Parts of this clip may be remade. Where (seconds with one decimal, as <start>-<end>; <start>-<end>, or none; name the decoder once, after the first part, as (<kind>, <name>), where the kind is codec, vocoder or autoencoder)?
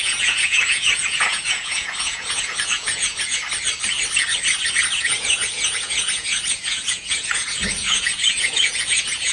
0.0-3.4 (vocoder, Vocos); 4.9-9.3